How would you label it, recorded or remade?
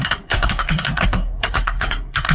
remade